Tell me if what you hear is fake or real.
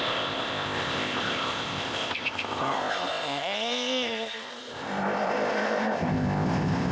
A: fake